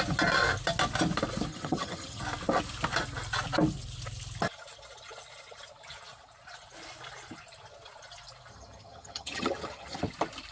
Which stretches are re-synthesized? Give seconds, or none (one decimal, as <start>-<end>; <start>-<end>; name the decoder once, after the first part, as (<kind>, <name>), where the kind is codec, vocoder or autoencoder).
1.5-2.2 (vocoder, HiFi-GAN); 8.5-10.0